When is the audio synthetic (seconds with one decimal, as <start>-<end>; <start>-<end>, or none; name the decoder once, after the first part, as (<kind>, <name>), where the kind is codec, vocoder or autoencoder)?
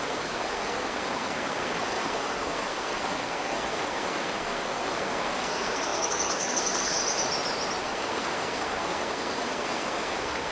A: 0.0-7.0 (codec, SNAC); 7.8-10.5